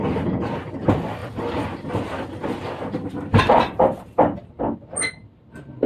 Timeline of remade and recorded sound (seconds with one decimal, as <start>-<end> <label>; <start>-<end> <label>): 0.0-1.2 recorded; 1.2-3.4 remade; 3.4-5.9 recorded